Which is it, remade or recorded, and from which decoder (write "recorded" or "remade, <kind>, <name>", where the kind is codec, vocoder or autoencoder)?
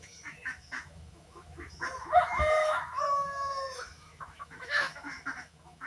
remade, autoencoder, DAC-VAE